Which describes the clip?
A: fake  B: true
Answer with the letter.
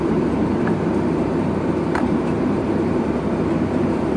A